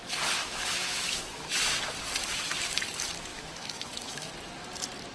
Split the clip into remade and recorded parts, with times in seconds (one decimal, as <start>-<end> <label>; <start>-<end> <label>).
0.0-0.4 recorded; 0.4-1.8 remade; 1.8-2.2 recorded; 2.2-2.8 remade; 2.8-3.3 recorded; 3.3-4.3 remade; 4.3-5.1 recorded